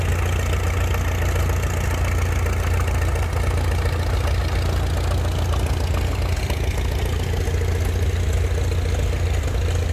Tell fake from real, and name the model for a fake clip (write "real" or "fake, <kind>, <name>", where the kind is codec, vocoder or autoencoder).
real